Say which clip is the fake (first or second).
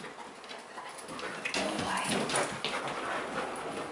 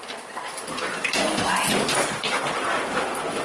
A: second